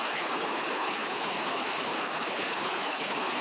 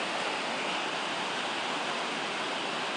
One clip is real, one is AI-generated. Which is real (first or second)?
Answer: second